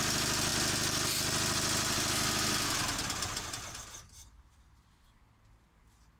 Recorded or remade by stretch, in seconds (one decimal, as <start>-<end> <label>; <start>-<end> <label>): 0.0-6.2 recorded